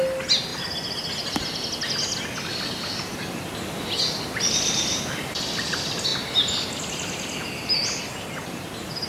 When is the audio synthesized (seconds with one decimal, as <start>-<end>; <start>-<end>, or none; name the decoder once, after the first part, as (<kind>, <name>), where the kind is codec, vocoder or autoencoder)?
none